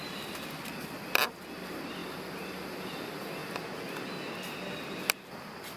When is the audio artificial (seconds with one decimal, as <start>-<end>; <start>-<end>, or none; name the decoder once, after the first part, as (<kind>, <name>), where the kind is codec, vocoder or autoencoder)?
0.0-3.4 (vocoder, BigVGAN v2); 4.8-5.8